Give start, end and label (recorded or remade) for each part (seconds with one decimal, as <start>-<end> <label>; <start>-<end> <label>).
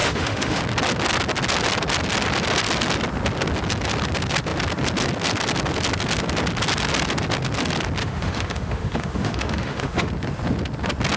0.0-0.6 remade; 0.6-8.0 recorded; 8.0-10.1 remade; 10.1-11.2 recorded